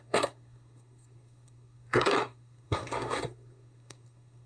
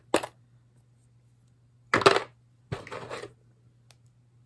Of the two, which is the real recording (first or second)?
second